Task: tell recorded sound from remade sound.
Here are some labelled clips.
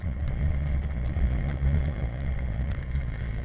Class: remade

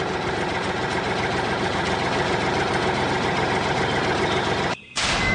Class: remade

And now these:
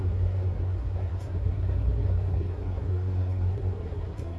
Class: remade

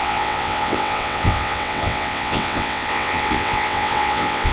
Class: remade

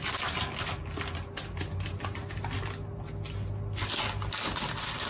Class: recorded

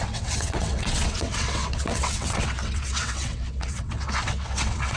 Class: remade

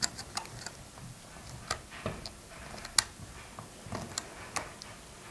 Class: recorded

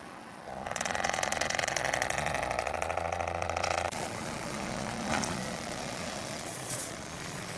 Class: remade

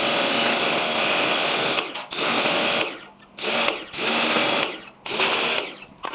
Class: recorded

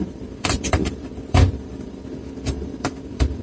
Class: remade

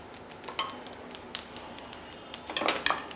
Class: recorded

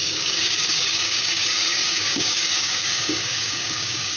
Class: remade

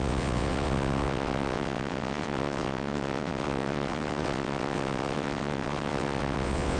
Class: remade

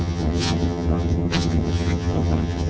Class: remade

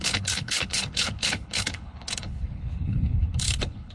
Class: remade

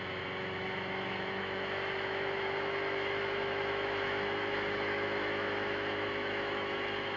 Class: remade